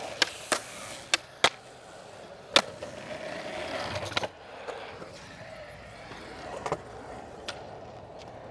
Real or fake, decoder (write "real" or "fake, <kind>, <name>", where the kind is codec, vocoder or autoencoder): real